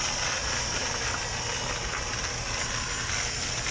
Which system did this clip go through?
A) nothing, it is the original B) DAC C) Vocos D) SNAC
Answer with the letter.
A